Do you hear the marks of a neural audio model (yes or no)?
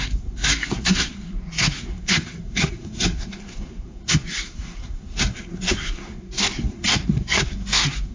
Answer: yes